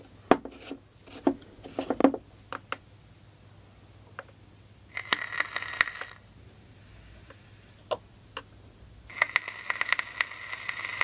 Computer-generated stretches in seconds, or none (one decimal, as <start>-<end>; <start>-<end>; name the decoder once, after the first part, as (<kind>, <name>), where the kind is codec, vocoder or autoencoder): none